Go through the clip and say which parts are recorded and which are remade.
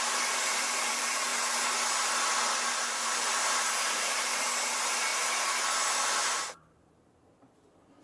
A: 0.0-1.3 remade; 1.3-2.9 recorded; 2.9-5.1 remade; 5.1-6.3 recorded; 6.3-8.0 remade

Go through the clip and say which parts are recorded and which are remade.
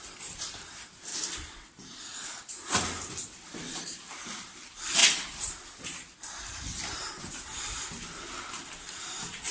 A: 0.0-5.0 remade; 5.0-8.7 recorded; 8.7-9.5 remade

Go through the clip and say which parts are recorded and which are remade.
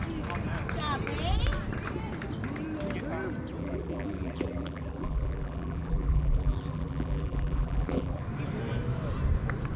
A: 0.0-3.6 recorded; 3.6-8.2 remade; 8.2-9.8 recorded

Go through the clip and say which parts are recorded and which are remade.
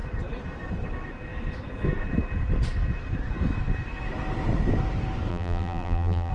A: 0.0-5.3 recorded; 5.3-6.3 remade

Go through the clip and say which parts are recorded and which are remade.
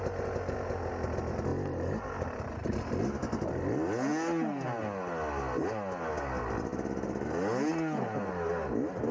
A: 0.0-1.5 recorded; 1.5-2.5 remade; 2.5-9.1 recorded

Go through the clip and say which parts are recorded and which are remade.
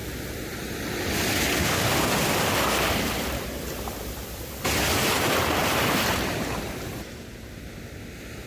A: 0.0-8.5 remade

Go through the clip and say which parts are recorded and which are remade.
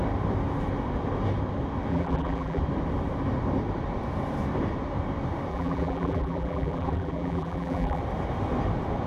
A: 0.0-1.9 recorded; 1.9-2.6 remade; 2.6-5.5 recorded; 5.5-8.0 remade; 8.0-9.1 recorded